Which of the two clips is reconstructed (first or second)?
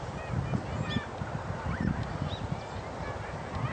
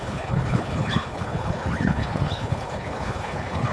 second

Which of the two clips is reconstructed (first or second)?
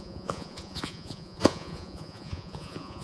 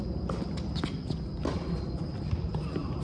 first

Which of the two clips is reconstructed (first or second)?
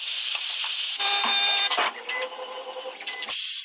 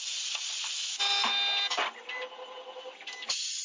first